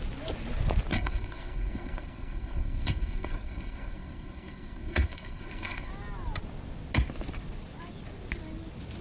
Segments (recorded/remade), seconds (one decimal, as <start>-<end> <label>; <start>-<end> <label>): 0.0-0.9 recorded; 0.9-5.9 remade; 5.9-9.0 recorded